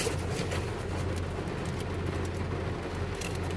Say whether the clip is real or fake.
real